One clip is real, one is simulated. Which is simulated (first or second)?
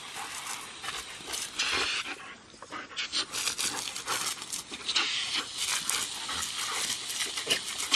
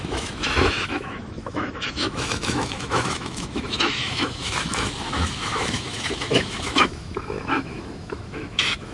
second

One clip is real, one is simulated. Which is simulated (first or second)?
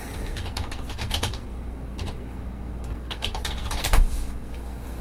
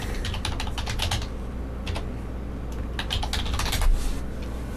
first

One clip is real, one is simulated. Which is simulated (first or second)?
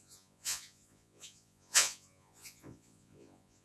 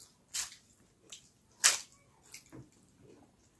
first